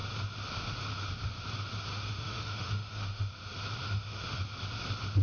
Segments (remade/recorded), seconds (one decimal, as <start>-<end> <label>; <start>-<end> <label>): 0.0-1.9 recorded; 1.9-3.3 remade; 3.3-3.8 recorded; 3.8-4.4 remade; 4.4-5.2 recorded